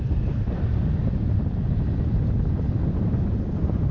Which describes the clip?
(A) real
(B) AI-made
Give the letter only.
A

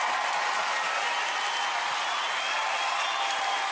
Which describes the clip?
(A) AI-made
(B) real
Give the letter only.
B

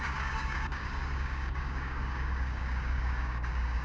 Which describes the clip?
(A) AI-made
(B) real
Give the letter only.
A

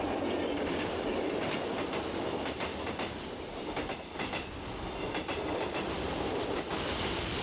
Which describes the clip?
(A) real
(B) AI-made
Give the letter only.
A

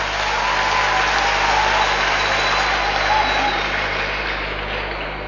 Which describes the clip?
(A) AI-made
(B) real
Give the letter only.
B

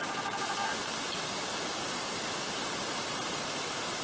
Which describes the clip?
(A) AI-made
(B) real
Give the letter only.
B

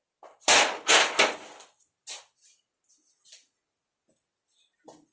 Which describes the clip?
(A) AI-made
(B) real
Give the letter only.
B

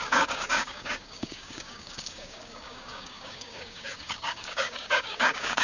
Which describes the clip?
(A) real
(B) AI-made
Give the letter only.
B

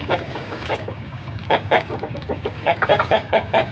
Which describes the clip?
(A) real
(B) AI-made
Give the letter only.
B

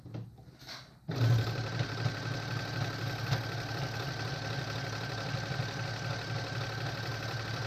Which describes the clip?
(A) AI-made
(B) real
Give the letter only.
B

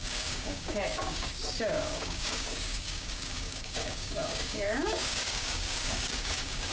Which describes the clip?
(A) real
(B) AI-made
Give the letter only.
B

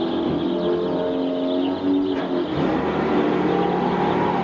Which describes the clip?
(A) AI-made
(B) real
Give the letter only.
B